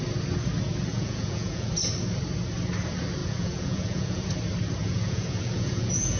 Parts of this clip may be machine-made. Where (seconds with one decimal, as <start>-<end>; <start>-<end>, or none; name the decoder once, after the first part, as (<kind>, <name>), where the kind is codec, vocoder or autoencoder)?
0.9-1.7 (vocoder, Vocos); 3.2-4.3; 4.8-6.2